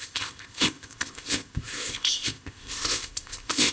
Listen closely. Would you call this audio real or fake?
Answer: fake